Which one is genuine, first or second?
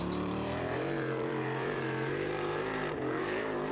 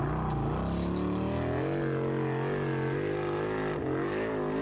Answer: second